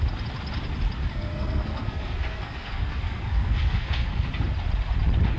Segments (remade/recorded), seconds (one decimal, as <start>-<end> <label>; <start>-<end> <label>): 0.0-1.1 recorded; 1.1-4.3 remade; 4.3-5.4 recorded